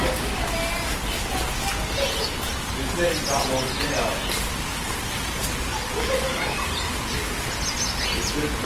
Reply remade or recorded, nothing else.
recorded